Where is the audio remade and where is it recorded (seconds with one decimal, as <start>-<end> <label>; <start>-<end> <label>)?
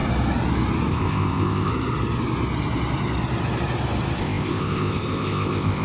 0.0-0.9 recorded; 0.9-1.7 remade; 1.7-4.2 recorded; 4.2-5.8 remade